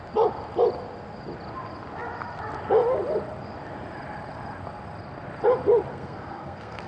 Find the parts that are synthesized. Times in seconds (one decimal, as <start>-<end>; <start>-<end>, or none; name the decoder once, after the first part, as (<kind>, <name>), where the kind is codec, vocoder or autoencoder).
5.9-6.9 (codec, SNAC)